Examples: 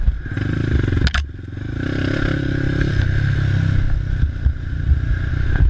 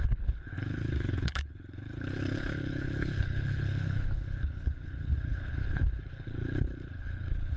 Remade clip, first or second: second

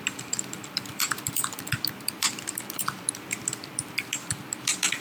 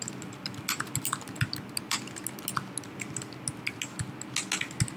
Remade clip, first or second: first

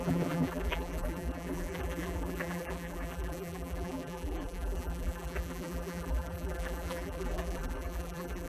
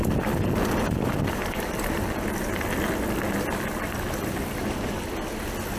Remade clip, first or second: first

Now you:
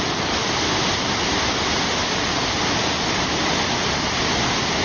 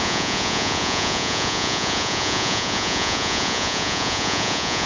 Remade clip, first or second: second